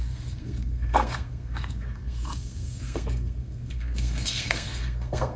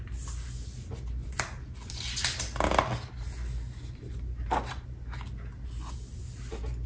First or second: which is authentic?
second